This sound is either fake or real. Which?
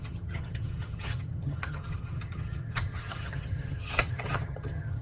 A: fake